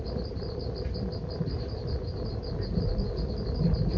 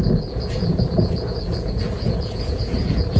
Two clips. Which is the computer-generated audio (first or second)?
second